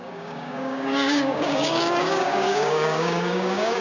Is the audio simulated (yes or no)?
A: yes